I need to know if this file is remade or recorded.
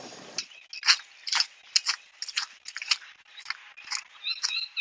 recorded